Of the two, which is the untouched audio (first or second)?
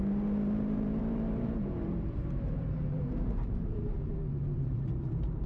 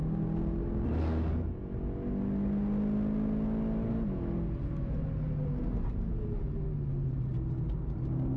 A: second